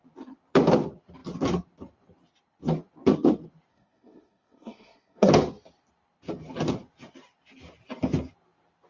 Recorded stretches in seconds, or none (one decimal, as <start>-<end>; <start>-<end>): 0.0-3.7; 5.3-8.9

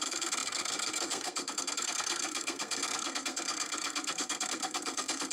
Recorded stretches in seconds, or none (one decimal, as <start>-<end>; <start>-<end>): none

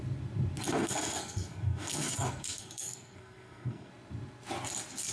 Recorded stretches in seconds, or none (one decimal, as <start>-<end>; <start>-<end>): 0.0-0.8; 3.9-5.1

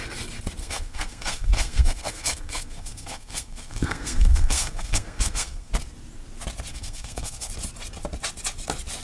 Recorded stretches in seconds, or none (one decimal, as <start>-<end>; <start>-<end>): 0.0-0.6; 5.7-6.7; 7.5-9.0

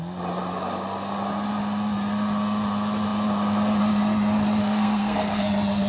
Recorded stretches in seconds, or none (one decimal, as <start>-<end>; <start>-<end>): 0.0-4.6; 5.4-5.9

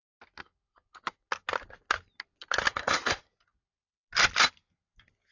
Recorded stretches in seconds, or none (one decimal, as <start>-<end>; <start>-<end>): 0.0-2.7; 3.3-5.3

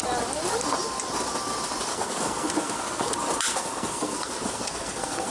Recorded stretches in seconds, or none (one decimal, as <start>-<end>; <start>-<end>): 0.0-1.9; 3.1-3.5

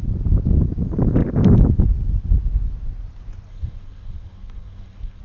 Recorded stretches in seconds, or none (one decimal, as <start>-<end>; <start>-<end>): 0.0-3.5